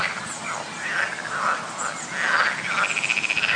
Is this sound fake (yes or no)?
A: no